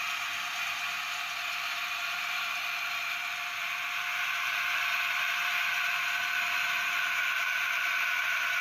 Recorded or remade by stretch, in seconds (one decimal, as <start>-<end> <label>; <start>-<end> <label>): 0.0-1.7 recorded; 1.7-2.4 remade; 2.4-8.6 recorded